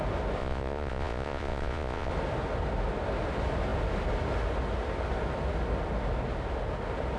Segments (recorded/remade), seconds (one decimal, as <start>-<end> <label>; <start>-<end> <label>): 0.0-0.4 recorded; 0.4-2.1 remade; 2.1-7.2 recorded